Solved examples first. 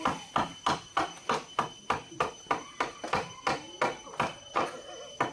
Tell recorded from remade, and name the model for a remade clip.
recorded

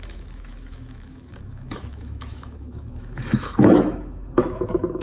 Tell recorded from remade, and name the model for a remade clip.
remade, autoencoder, DAC-VAE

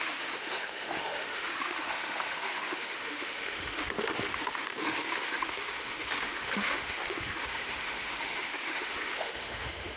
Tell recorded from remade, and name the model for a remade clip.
remade, autoencoder, DAC-VAE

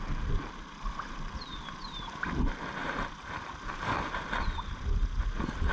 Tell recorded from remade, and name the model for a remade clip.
recorded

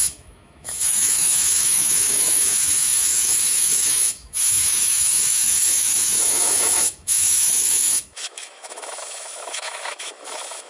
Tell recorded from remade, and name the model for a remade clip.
remade, autoencoder, DAC-VAE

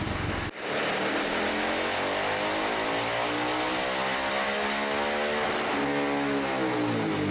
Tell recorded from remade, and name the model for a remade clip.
recorded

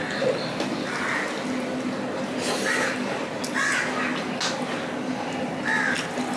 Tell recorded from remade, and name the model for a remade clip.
recorded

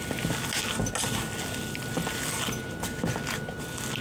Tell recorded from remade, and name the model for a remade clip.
recorded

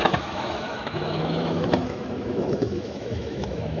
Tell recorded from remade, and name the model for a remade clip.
remade, autoencoder, DAC-VAE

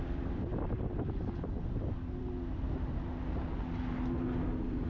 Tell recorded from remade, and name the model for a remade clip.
recorded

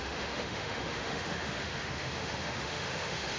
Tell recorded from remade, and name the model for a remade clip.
remade, autoencoder, DAC-VAE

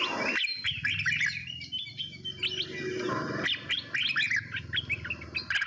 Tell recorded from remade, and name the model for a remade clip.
recorded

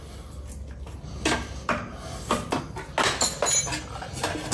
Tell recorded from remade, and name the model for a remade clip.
recorded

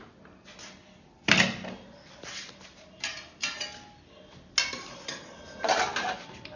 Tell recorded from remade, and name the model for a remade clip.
recorded